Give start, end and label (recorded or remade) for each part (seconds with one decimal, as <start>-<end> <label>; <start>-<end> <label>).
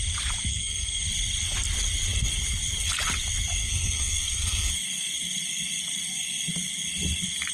0.0-0.5 recorded; 0.5-1.0 remade; 1.0-3.6 recorded; 3.6-4.7 remade; 4.7-7.5 recorded